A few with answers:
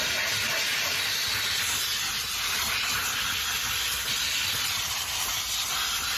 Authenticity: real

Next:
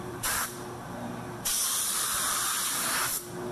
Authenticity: fake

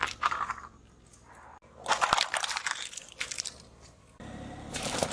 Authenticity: fake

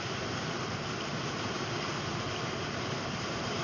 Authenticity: fake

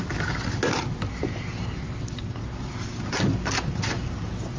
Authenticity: fake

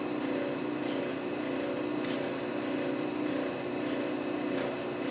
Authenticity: real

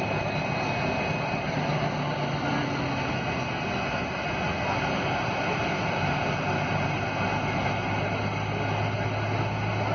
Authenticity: real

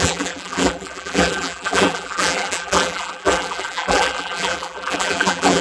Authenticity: fake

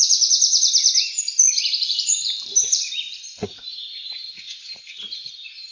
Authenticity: fake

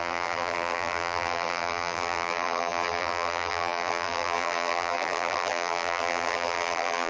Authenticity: fake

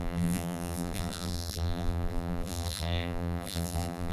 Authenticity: fake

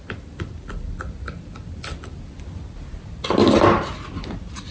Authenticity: fake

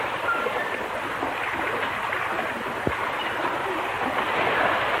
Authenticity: real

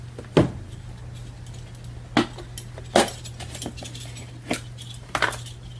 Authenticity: real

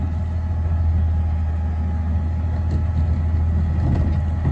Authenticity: real